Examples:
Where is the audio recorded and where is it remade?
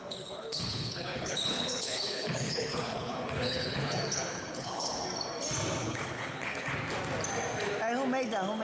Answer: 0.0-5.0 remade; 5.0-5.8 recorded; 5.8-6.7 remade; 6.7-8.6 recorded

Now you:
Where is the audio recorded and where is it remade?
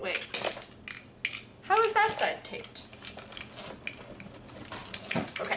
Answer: 0.0-4.8 recorded; 4.8-5.6 remade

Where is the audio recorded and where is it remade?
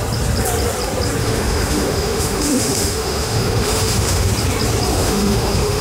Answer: 0.0-1.2 recorded; 1.2-4.3 remade; 4.3-4.9 recorded; 4.9-5.8 remade